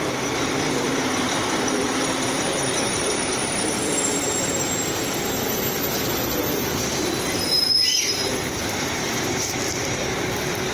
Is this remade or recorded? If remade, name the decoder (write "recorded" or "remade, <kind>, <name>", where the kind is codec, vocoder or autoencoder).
remade, vocoder, BigVGAN v2